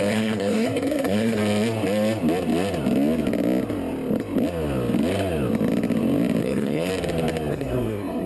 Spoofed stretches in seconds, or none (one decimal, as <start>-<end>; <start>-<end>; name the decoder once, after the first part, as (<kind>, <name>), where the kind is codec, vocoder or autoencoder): 0.0-1.4 (codec, SNAC); 6.4-6.9; 7.5-8.3